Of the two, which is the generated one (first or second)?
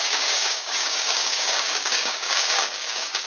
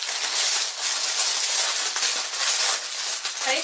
first